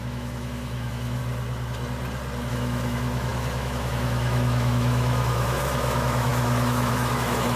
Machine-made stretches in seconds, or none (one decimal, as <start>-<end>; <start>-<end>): 0.0-1.2; 2.5-7.6